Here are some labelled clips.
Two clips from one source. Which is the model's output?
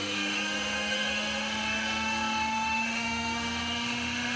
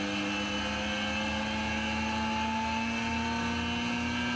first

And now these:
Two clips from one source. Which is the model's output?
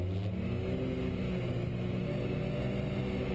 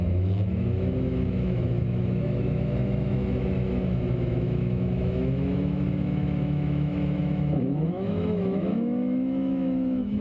second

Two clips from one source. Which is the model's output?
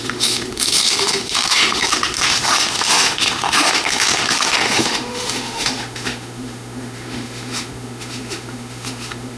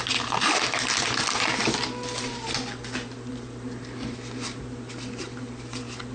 first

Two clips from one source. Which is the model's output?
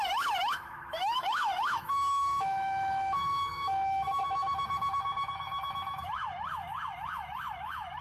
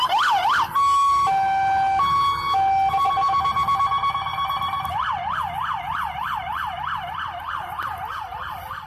first